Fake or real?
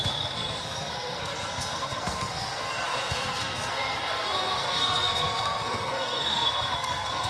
fake